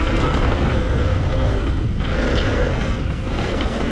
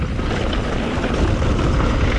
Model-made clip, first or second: first